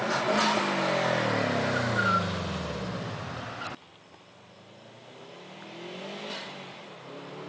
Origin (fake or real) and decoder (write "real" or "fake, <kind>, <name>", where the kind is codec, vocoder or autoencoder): real